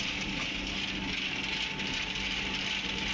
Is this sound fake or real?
real